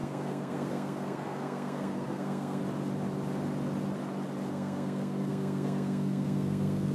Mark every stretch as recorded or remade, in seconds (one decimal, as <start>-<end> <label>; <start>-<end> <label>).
0.0-2.6 remade; 2.6-4.5 recorded; 4.5-6.9 remade